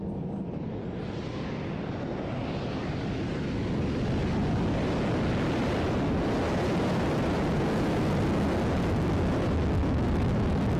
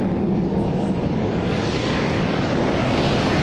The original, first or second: first